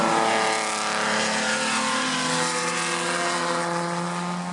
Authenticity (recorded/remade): recorded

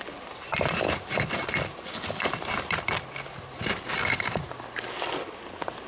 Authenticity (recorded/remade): recorded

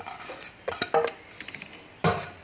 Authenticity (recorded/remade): recorded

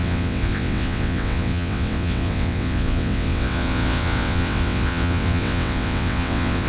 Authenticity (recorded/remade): remade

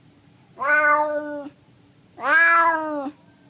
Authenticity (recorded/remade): recorded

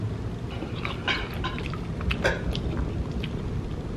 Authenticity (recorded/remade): recorded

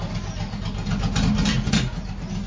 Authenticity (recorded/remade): recorded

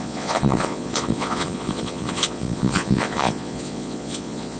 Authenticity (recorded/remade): remade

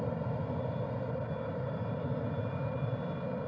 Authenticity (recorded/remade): recorded